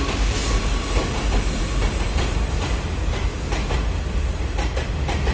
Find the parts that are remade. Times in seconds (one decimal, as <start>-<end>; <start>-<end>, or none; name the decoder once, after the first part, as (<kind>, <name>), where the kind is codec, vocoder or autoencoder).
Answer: none